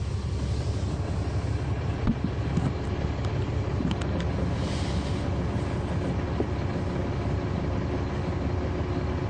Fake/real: real